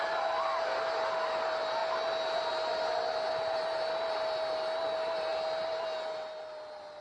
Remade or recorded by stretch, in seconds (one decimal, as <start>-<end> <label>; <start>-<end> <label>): 0.0-7.0 recorded